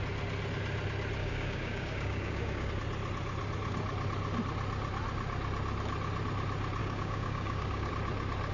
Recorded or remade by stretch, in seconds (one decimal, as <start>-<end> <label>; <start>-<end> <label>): 0.0-1.2 recorded; 1.2-2.7 remade; 2.7-6.8 recorded; 6.8-7.9 remade; 7.9-8.5 recorded